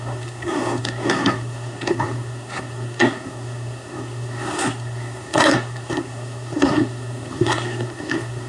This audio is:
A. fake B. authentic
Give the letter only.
A